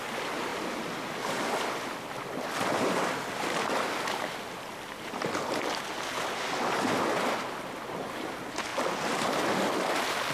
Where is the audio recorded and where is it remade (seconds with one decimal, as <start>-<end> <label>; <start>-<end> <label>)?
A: 0.0-10.3 recorded